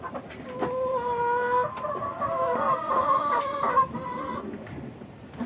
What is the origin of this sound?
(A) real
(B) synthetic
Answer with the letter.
A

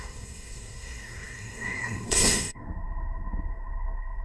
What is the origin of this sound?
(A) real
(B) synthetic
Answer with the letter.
B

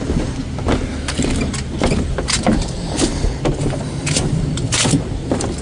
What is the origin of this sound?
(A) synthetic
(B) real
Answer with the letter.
B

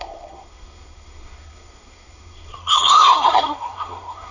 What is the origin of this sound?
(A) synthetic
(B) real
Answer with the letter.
A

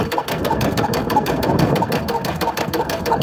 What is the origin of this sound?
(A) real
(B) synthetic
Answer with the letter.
B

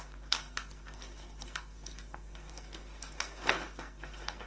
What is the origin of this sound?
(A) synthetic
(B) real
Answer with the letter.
A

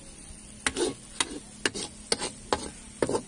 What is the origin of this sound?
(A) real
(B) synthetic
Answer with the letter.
A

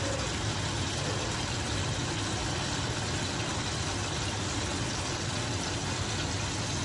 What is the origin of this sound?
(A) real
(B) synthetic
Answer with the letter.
A